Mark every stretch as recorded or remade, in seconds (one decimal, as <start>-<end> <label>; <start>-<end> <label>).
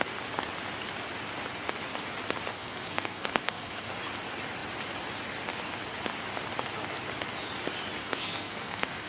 0.0-2.5 recorded; 2.5-3.9 remade; 3.9-8.0 recorded; 8.0-9.1 remade